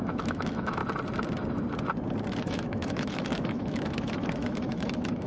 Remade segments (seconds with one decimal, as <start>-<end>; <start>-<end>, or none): 0.0-0.8; 2.4-5.3